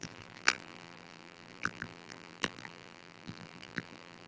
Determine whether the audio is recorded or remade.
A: remade